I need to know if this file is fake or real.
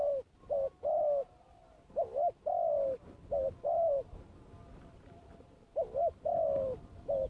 real